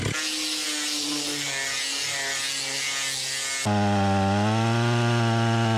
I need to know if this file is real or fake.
real